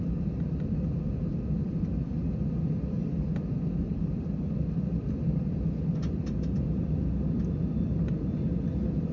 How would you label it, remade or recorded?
recorded